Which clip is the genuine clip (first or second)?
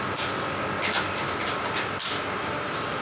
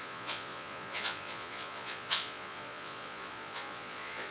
first